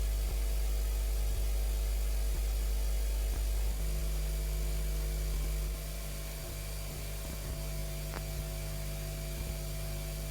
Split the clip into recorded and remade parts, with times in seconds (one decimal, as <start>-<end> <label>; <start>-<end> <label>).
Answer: 0.0-10.3 recorded